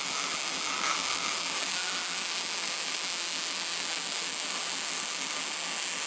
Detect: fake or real real